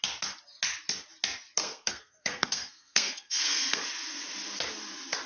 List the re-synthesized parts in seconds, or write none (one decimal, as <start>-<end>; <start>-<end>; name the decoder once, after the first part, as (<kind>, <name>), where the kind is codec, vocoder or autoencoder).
1.6-3.8 (codec, SNAC)